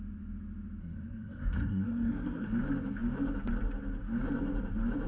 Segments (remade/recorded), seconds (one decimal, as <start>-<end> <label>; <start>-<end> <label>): 0.0-0.8 recorded; 0.8-2.5 remade; 2.5-5.1 recorded